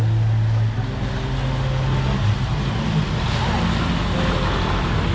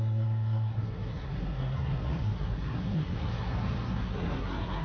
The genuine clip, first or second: first